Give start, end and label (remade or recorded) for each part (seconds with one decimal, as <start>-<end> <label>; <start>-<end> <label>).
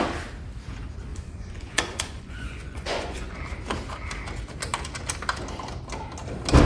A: 0.0-1.1 recorded; 1.1-3.4 remade; 3.4-6.6 recorded